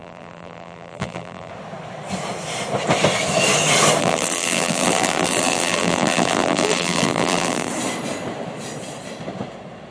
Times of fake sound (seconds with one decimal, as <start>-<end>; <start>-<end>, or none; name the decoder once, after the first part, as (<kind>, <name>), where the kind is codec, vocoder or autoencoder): 0.0-1.5 (vocoder, BigVGAN v2); 4.0-7.7